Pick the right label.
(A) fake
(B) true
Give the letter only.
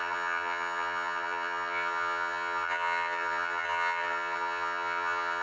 A